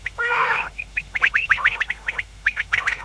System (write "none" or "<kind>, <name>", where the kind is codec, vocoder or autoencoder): autoencoder, DAC-VAE